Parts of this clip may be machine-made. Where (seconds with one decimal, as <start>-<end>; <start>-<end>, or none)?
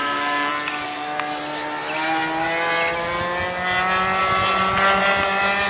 0.0-0.5